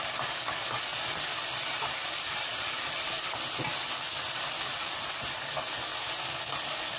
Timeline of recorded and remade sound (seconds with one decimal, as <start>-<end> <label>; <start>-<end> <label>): 0.0-7.0 recorded